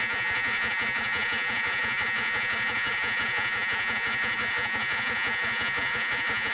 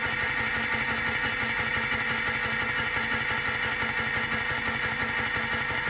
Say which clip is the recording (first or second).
second